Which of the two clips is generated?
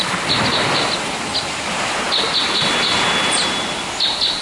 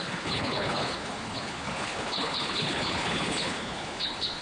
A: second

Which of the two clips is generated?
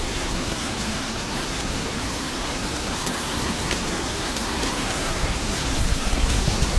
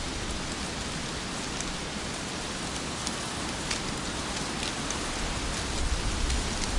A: first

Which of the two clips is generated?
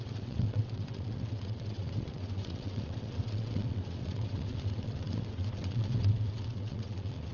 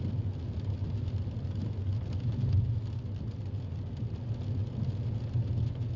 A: first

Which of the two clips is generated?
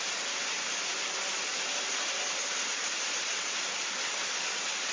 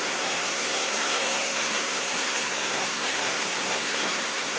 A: second